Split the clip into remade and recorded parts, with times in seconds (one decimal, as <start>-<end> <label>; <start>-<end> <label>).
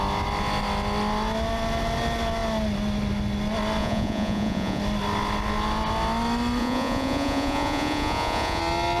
0.0-3.8 recorded; 3.8-4.8 remade; 4.8-6.6 recorded; 6.6-8.6 remade; 8.6-9.0 recorded